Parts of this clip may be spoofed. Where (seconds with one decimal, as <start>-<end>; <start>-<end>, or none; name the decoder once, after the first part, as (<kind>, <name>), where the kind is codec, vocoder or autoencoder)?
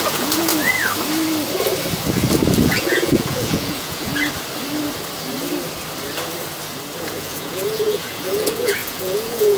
0.0-0.5 (vocoder, Vocos); 2.6-4.1; 7.0-9.6